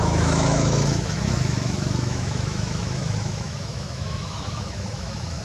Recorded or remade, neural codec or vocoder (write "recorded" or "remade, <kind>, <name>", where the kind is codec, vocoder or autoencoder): remade, autoencoder, DAC-VAE